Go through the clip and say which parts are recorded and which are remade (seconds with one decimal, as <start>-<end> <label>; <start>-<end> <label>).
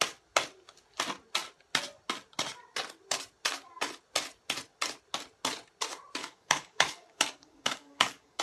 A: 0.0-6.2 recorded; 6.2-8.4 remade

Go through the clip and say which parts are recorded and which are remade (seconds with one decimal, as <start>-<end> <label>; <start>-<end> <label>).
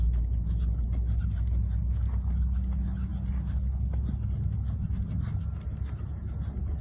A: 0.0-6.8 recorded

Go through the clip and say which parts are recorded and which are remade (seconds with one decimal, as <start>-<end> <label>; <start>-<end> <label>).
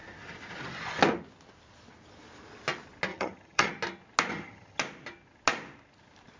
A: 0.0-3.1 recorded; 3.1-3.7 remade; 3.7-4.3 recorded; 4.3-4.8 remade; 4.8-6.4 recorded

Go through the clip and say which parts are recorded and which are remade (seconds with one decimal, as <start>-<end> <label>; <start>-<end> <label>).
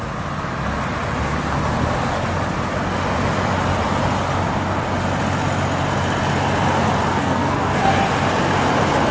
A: 0.0-7.1 recorded; 7.1-7.8 remade; 7.8-9.1 recorded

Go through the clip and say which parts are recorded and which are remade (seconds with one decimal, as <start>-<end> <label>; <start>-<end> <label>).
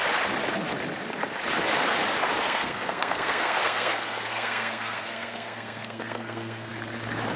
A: 0.0-2.4 recorded; 2.4-6.7 remade; 6.7-7.4 recorded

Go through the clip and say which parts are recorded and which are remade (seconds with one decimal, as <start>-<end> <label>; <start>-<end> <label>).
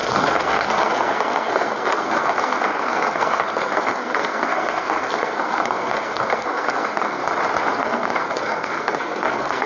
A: 0.0-7.2 remade; 7.2-7.8 recorded; 7.8-9.7 remade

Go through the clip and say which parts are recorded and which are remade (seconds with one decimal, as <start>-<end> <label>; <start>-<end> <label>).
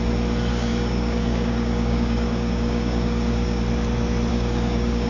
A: 0.0-0.5 recorded; 0.5-3.6 remade; 3.6-4.3 recorded; 4.3-5.1 remade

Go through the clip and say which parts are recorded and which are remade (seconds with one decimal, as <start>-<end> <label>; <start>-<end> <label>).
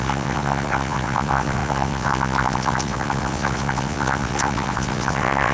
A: 0.0-5.5 remade